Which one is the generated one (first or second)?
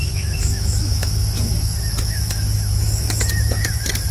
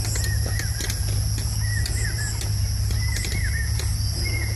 first